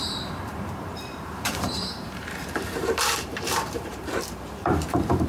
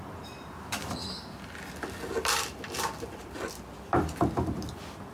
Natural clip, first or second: second